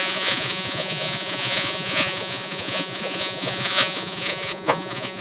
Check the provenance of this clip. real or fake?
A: fake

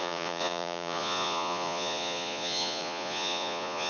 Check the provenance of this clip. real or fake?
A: fake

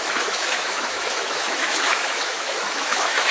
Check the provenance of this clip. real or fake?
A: fake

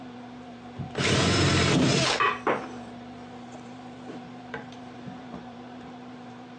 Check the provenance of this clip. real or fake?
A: fake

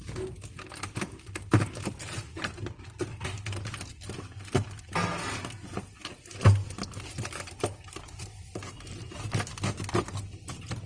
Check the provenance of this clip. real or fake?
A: real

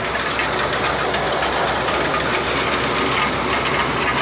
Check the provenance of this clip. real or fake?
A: real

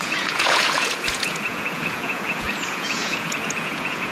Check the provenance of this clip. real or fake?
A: fake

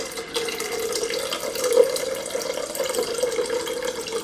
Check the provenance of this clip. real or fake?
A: real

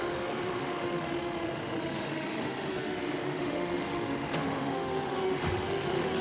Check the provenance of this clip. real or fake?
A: fake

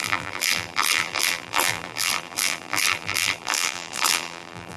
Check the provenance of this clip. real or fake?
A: fake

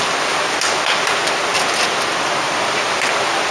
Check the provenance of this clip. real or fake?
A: real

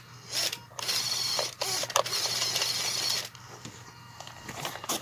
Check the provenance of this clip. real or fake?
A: real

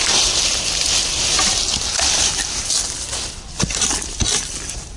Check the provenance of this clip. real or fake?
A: real